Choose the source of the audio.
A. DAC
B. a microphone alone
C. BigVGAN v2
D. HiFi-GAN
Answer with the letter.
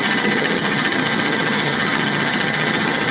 D